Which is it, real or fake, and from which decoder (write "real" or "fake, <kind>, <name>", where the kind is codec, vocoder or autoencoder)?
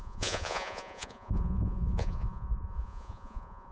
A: fake, vocoder, Vocos